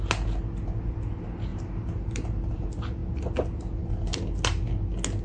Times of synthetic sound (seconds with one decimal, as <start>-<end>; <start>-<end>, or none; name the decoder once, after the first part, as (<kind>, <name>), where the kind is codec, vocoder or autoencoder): 1.5-2.6 (vocoder, BigVGAN v2)